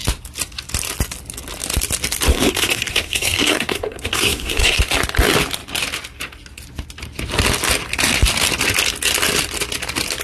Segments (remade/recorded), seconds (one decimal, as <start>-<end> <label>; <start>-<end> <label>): 0.0-2.3 recorded; 2.3-4.8 remade; 4.8-10.2 recorded